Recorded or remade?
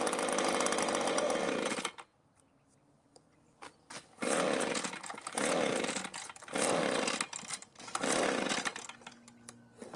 recorded